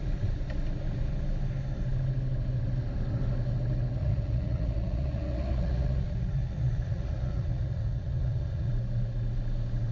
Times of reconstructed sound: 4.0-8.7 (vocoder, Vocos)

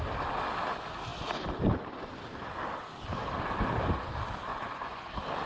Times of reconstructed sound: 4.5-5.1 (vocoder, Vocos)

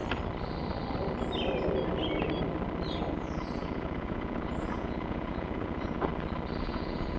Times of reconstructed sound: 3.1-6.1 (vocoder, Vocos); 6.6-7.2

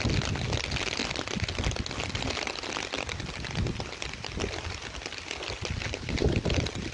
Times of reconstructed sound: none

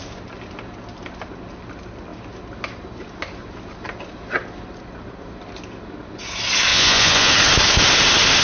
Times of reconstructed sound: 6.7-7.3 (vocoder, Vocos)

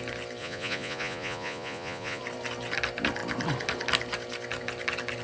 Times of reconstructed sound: 0.4-2.2 (vocoder, Vocos)

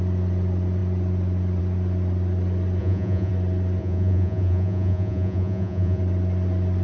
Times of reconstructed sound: 2.8-3.3 (vocoder, Vocos); 3.8-6.0